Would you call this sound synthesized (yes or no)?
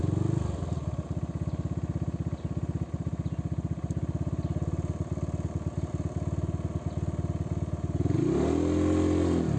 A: no